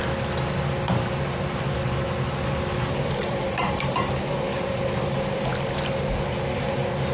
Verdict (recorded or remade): recorded